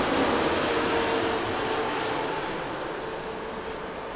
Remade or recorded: recorded